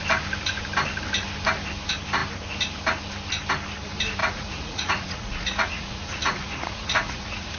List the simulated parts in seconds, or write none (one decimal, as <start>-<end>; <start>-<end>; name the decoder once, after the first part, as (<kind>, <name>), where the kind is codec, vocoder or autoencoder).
4.2-7.6 (vocoder, Vocos)